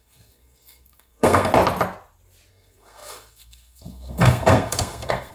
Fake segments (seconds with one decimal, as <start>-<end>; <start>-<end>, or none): 0.0-1.5; 2.5-5.3